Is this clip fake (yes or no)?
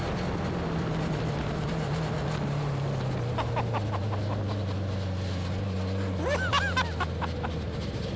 no